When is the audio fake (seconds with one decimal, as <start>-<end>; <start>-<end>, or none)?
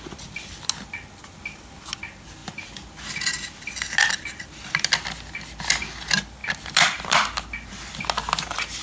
none